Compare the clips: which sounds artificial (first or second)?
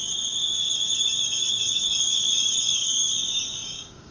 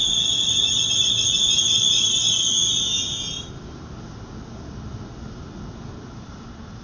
first